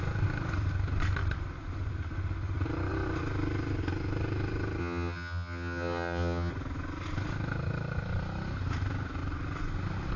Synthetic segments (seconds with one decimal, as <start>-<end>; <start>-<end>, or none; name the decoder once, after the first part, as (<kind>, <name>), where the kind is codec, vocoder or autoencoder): 4.8-6.5 (vocoder, HiFi-GAN)